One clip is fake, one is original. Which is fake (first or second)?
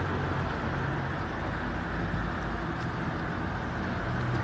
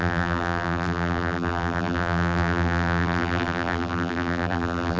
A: second